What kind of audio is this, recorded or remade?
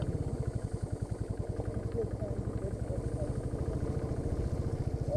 recorded